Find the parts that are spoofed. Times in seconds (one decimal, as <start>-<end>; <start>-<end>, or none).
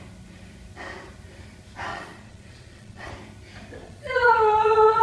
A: 1.9-3.1; 3.8-5.0